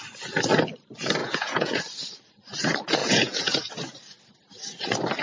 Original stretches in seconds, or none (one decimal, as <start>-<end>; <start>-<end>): 0.0-1.2; 1.8-3.0; 3.6-5.2